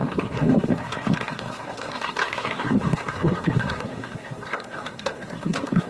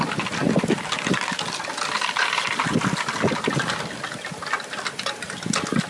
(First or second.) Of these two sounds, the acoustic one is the second